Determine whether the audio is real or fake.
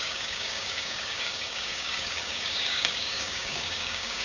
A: fake